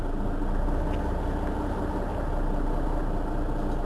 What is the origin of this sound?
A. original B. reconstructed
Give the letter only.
A